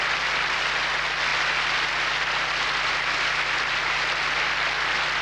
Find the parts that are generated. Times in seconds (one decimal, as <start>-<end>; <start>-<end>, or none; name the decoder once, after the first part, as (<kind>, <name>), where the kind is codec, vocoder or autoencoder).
none